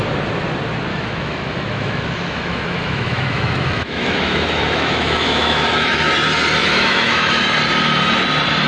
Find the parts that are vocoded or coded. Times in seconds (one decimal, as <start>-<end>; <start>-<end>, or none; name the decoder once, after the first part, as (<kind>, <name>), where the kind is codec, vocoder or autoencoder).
0.9-6.1 (autoencoder, DAC-VAE); 6.6-7.4